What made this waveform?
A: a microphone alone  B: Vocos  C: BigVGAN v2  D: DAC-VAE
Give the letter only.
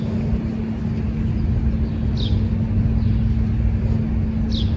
A